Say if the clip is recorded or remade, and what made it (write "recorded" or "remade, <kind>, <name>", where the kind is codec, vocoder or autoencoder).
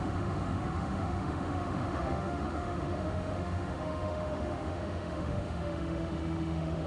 remade, autoencoder, DAC-VAE